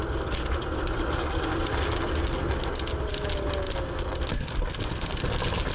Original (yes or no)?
yes